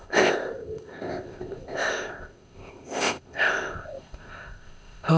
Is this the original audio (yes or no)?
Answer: no